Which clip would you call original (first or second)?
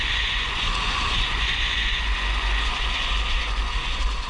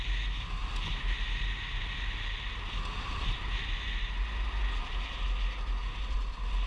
second